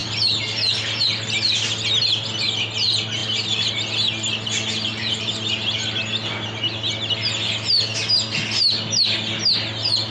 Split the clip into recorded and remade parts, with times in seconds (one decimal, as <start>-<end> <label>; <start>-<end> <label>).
0.0-3.2 recorded; 3.2-7.1 remade; 7.1-10.1 recorded